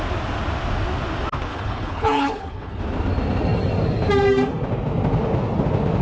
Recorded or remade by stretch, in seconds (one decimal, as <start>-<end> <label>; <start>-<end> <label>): 0.0-1.5 recorded; 1.5-2.8 remade; 2.8-6.0 recorded